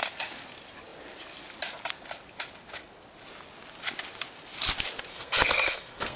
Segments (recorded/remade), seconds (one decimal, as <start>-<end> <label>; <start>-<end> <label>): 0.0-5.1 recorded; 5.1-6.2 remade

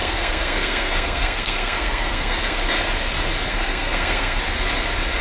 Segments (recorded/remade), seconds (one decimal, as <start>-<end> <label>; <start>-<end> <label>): 0.0-2.6 remade; 2.6-3.5 recorded; 3.5-4.4 remade; 4.4-5.2 recorded

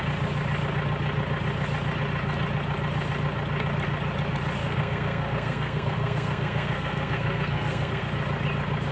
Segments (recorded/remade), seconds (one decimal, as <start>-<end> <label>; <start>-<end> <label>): 0.0-4.6 recorded; 4.6-8.1 remade; 8.1-8.9 recorded